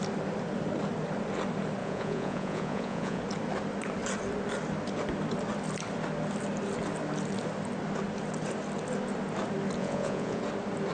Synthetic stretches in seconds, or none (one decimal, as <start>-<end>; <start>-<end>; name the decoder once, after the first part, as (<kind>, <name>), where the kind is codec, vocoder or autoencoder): 1.8-3.2 (vocoder, Vocos); 9.8-10.4